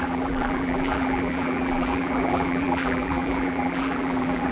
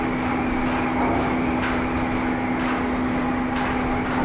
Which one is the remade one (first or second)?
first